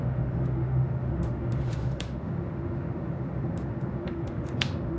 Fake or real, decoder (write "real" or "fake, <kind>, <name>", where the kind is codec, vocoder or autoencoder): fake, autoencoder, DAC-VAE